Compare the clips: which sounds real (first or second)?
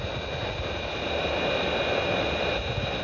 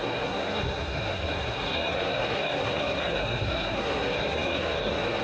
first